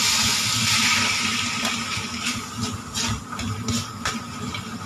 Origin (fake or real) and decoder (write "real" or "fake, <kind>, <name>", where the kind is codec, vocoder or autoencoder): real